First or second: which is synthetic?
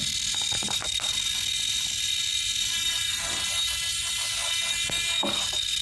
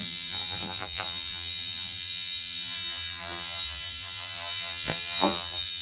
second